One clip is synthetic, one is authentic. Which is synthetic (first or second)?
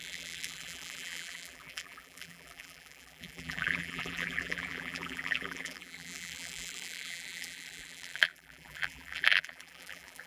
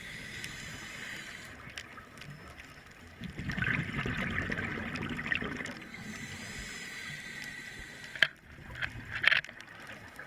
first